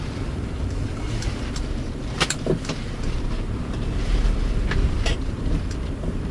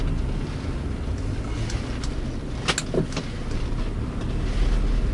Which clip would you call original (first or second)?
second